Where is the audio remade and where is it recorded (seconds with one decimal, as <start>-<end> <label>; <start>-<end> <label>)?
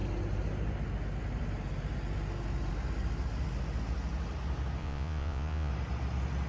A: 0.0-4.8 recorded; 4.8-5.7 remade; 5.7-6.5 recorded